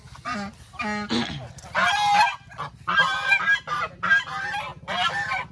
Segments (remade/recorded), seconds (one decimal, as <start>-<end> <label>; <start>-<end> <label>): 0.0-5.5 recorded